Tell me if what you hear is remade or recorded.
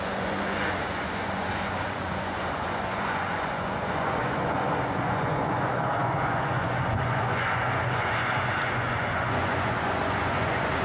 remade